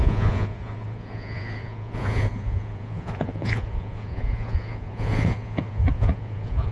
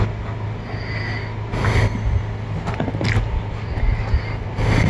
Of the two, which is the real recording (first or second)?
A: second